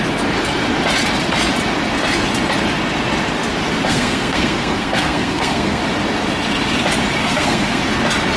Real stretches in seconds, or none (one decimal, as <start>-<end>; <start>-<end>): 0.0-3.9; 5.8-7.2; 7.8-8.4